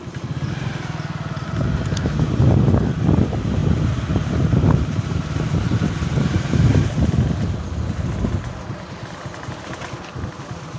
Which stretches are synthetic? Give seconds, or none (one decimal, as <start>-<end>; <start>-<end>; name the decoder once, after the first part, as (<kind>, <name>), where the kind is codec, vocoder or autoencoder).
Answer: none